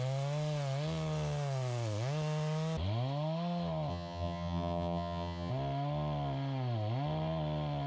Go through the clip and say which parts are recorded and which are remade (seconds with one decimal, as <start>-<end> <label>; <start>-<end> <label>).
0.0-3.9 recorded; 3.9-5.5 remade; 5.5-7.9 recorded